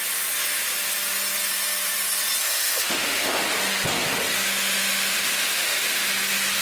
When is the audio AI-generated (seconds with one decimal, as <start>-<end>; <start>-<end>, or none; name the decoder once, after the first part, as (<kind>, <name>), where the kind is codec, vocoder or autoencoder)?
2.4-3.4 (autoencoder, DAC-VAE); 4.5-6.1